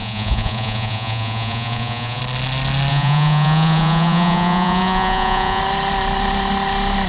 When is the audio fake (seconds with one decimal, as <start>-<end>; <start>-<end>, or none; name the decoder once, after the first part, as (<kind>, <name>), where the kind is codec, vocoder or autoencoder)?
0.0-2.2 (vocoder, Vocos); 2.9-5.6